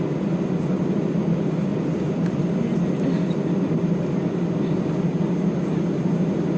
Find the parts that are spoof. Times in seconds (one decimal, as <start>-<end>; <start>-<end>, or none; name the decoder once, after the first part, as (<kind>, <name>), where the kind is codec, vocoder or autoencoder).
1.7-2.4 (vocoder, BigVGAN v2)